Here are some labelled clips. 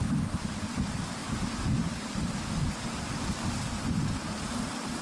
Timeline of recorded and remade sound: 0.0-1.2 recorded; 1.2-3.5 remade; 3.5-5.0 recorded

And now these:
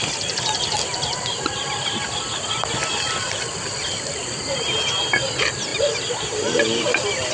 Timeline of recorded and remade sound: 0.0-0.9 recorded; 0.9-1.8 remade; 1.8-7.3 recorded